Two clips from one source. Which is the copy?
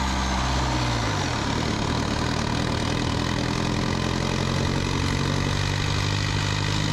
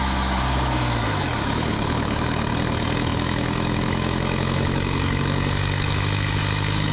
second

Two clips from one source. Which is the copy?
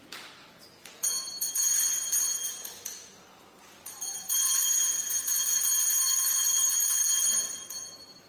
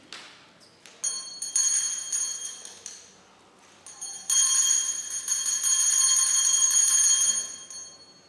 first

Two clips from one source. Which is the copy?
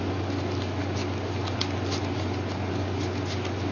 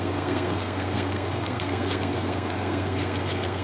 second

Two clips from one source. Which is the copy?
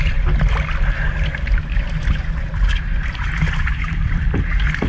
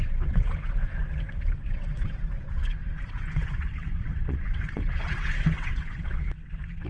second